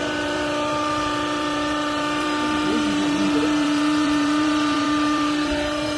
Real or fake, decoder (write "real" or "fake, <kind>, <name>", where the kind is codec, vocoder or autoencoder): fake, vocoder, BigVGAN v2